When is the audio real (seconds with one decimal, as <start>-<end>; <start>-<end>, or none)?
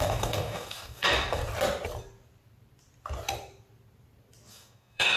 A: 1.4-4.5